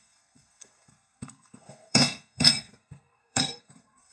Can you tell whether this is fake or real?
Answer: fake